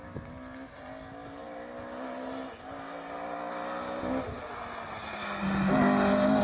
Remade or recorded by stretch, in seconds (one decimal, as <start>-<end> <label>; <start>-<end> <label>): 0.0-6.4 recorded